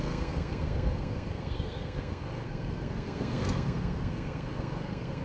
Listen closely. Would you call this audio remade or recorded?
remade